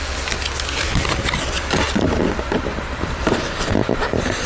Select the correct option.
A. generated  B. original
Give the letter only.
B